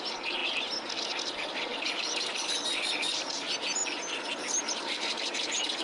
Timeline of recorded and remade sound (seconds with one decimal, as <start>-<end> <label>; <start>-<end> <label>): 0.0-0.4 remade; 0.4-1.0 recorded; 1.0-3.8 remade; 3.8-4.7 recorded; 4.7-5.8 remade